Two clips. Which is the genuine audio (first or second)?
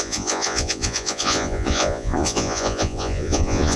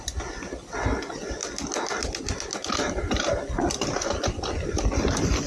second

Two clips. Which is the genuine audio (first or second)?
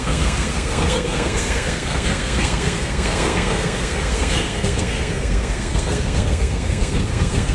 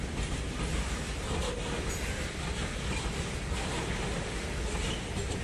second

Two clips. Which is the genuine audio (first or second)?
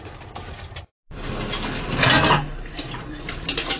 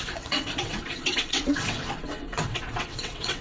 first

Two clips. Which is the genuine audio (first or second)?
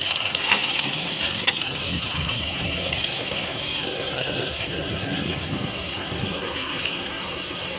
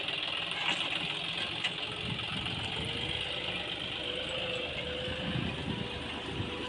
second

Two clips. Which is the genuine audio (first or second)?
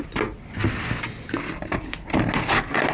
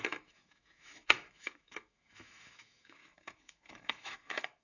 first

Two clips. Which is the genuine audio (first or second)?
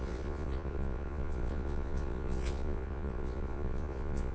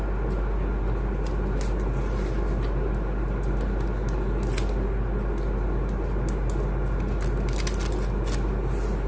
second